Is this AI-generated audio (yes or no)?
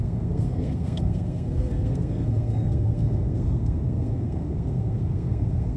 yes